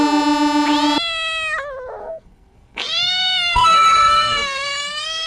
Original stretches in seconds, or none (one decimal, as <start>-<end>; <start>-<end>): 0.0-2.0